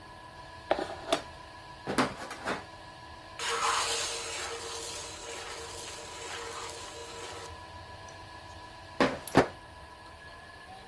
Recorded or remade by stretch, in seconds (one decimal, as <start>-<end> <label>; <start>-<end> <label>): 0.0-10.9 recorded

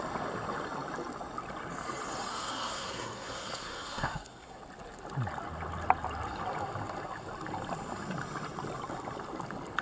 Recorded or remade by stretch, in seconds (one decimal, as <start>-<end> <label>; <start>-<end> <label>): 0.0-2.3 recorded; 2.3-4.6 remade; 4.6-9.8 recorded

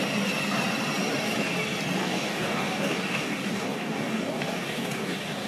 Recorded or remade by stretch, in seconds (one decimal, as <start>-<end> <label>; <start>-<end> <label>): 0.0-2.0 recorded; 2.0-5.5 remade

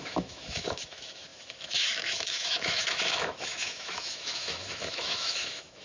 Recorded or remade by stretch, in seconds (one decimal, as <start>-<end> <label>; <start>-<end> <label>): 0.0-5.8 remade